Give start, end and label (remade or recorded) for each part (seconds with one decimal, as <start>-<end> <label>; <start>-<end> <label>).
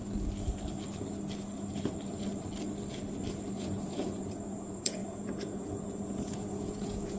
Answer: 0.0-3.5 recorded; 3.5-7.2 remade